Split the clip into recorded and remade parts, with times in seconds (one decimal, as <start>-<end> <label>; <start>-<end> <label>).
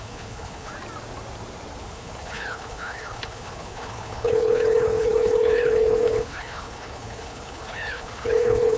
0.0-0.7 remade; 0.7-1.8 recorded; 1.8-8.8 remade